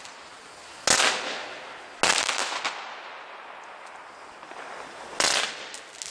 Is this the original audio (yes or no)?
yes